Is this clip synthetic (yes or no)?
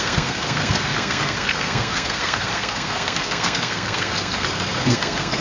yes